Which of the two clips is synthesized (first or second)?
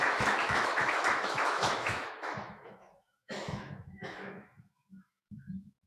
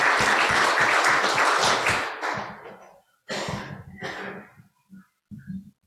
first